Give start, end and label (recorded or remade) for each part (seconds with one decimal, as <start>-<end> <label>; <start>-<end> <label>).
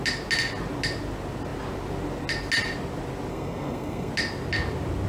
0.0-3.3 recorded; 3.3-4.1 remade; 4.1-5.1 recorded